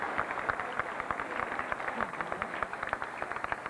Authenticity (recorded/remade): recorded